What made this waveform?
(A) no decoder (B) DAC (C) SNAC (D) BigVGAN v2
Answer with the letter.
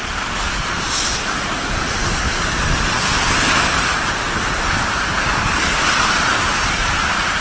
A